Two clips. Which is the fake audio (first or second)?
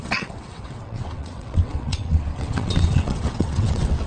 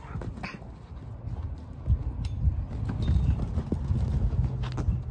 first